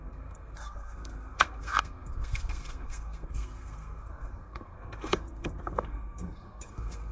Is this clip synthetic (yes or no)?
yes